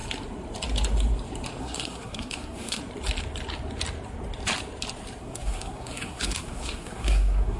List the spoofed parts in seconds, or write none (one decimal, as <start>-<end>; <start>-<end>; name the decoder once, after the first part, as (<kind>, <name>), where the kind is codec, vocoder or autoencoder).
1.6-2.8 (codec, SNAC); 5.2-7.6